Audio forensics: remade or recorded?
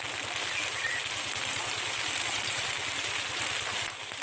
recorded